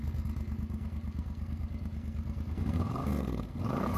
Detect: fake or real fake